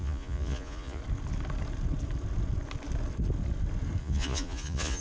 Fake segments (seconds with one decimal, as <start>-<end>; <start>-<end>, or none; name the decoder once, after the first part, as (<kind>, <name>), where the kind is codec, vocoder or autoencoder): 0.0-1.0 (vocoder, Vocos); 4.0-5.0